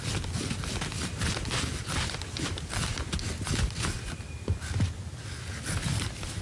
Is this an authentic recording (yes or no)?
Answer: yes